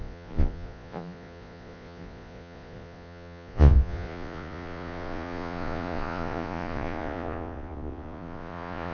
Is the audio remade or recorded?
remade